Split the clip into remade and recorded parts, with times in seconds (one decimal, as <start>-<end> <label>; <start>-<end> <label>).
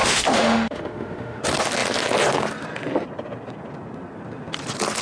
0.0-1.4 remade; 1.4-5.0 recorded